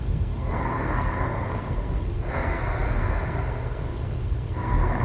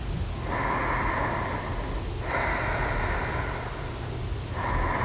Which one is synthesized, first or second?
first